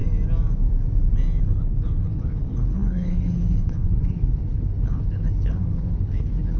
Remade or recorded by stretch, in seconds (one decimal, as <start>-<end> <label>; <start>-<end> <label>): 0.0-1.4 recorded; 1.4-6.6 remade